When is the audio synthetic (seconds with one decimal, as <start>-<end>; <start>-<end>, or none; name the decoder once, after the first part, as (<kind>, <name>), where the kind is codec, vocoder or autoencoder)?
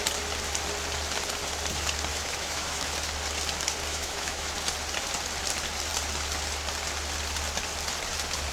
2.1-2.9 (autoencoder, DAC-VAE); 3.9-4.5